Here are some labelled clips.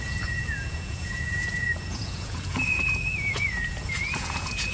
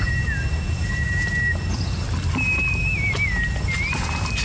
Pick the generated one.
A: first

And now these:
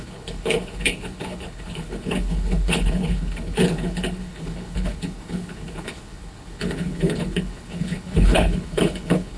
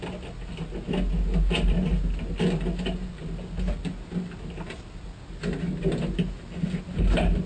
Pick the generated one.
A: first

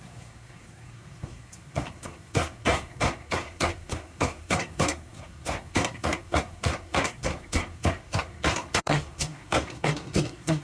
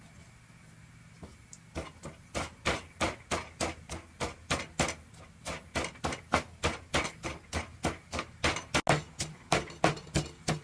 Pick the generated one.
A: first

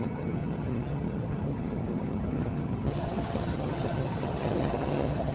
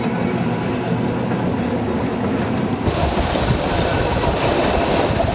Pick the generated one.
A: first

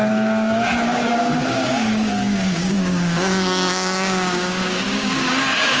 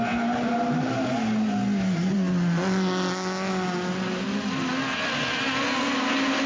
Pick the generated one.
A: first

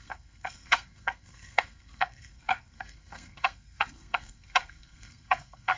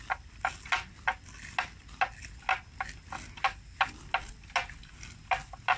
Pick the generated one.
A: first